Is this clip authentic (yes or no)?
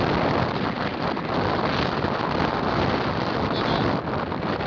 yes